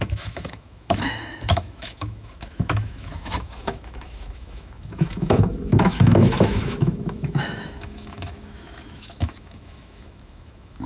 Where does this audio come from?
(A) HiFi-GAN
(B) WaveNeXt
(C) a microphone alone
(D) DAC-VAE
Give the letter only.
D